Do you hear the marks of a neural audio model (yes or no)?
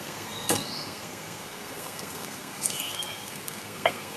yes